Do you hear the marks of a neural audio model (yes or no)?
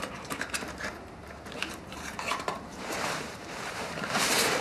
yes